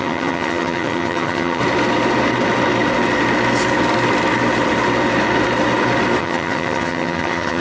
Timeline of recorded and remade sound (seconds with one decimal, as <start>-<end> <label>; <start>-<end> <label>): 0.0-1.6 remade; 1.6-6.2 recorded; 6.2-7.6 remade